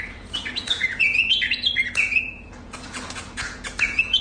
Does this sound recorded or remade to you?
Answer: remade